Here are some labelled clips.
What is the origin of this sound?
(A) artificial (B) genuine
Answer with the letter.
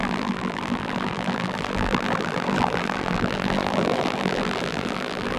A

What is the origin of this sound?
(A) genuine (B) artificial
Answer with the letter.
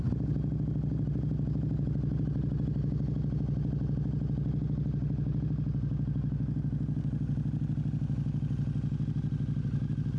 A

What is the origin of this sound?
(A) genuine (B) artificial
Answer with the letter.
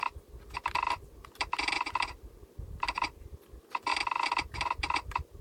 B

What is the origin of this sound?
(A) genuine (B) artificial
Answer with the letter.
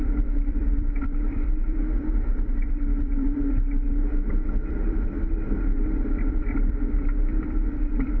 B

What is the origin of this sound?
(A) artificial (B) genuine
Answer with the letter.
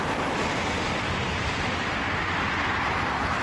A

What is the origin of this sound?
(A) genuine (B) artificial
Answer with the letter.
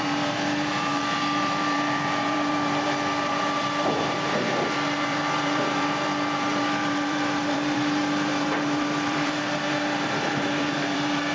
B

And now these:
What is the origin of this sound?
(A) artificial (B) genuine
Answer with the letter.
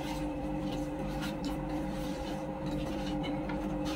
A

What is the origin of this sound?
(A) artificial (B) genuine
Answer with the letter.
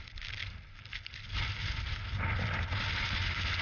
B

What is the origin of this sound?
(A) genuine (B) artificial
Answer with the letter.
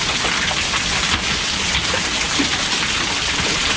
A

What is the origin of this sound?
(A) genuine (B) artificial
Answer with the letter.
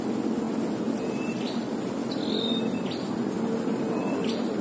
B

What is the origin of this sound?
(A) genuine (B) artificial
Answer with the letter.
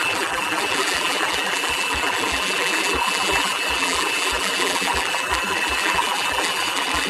B